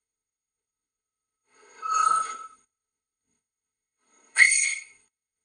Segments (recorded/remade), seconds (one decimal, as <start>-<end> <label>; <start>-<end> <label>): 0.0-5.4 remade